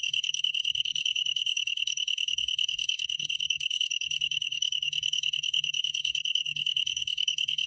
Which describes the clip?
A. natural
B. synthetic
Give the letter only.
B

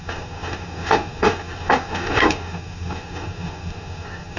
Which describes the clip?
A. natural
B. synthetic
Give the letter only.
B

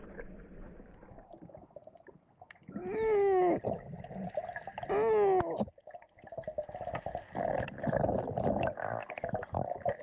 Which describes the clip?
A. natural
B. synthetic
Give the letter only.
A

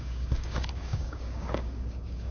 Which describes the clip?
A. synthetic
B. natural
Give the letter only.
A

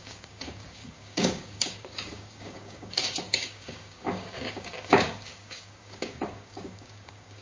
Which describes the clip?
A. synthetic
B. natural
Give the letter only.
A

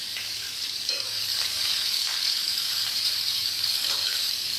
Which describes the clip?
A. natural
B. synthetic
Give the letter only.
B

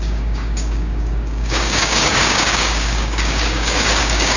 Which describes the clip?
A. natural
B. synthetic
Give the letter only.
B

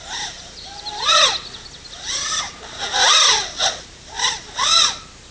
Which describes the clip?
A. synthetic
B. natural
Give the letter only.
B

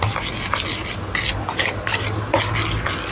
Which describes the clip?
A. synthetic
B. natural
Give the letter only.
B